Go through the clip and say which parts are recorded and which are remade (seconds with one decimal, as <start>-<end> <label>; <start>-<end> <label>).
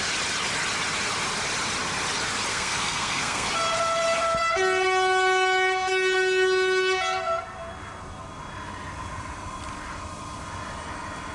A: 0.0-2.5 recorded; 2.5-3.5 remade; 3.5-11.3 recorded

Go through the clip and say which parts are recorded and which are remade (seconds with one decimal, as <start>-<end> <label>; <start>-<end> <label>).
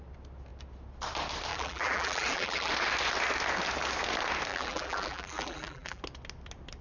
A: 0.0-1.5 recorded; 1.5-2.7 remade; 2.7-4.5 recorded; 4.5-6.0 remade; 6.0-6.8 recorded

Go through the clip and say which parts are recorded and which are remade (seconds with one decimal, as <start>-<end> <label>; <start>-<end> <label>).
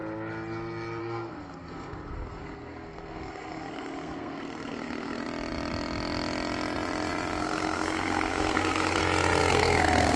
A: 0.0-1.0 recorded; 1.0-5.2 remade; 5.2-7.4 recorded; 7.4-9.0 remade; 9.0-9.5 recorded; 9.5-10.2 remade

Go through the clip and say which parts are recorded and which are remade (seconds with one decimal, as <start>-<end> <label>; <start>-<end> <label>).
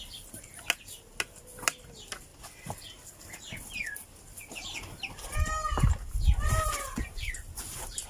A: 0.0-8.1 recorded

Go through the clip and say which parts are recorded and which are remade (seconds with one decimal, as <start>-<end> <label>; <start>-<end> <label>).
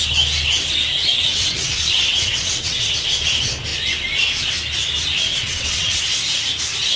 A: 0.0-1.1 recorded; 1.1-2.9 remade; 2.9-5.3 recorded; 5.3-6.0 remade; 6.0-7.0 recorded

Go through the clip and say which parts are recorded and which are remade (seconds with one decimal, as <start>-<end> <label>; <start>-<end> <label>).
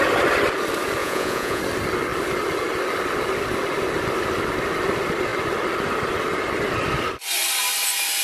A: 0.0-1.0 recorded; 1.0-1.6 remade; 1.6-8.2 recorded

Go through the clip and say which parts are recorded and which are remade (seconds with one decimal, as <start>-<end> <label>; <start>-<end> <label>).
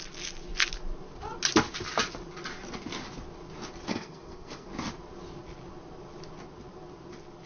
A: 0.0-3.9 recorded; 3.9-4.7 remade; 4.7-7.5 recorded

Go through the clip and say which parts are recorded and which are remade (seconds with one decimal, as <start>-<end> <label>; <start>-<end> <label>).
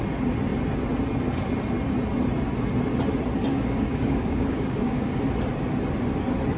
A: 0.0-3.5 recorded; 3.5-5.2 remade; 5.2-6.6 recorded